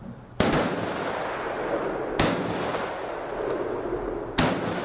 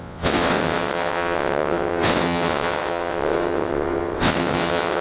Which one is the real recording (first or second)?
first